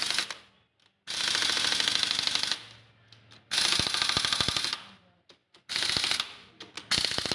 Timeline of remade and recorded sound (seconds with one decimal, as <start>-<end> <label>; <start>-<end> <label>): 0.0-7.3 recorded